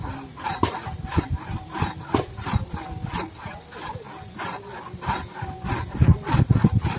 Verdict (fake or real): real